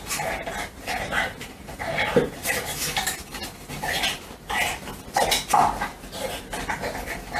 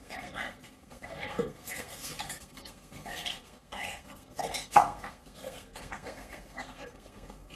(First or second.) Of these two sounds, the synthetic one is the second